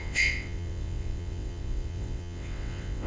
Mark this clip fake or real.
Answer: fake